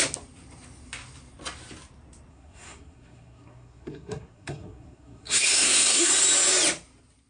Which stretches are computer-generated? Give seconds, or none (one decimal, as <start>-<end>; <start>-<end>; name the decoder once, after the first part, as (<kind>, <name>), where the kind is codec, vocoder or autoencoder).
2.3-6.1 (codec, SNAC)